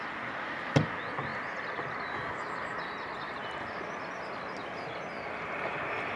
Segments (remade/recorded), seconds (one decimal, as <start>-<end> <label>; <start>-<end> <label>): 0.0-6.2 recorded